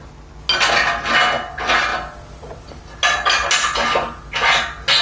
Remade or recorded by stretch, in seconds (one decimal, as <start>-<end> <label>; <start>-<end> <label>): 0.0-5.0 recorded